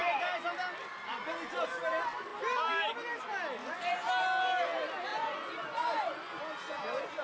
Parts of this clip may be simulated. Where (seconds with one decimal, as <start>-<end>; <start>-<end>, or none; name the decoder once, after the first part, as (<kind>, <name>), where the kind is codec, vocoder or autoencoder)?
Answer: 3.6-4.1 (vocoder, Vocos); 5.1-6.4